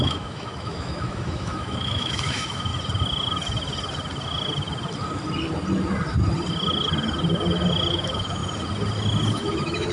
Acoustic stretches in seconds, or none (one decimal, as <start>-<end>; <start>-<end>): 2.7-7.9; 8.4-9.3